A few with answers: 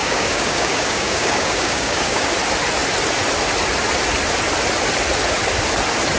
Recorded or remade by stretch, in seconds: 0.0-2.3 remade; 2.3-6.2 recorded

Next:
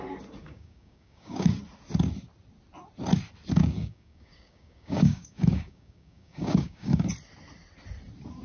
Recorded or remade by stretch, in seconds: 0.0-0.4 recorded; 0.4-1.5 remade; 1.5-3.6 recorded; 3.6-7.1 remade; 7.1-8.4 recorded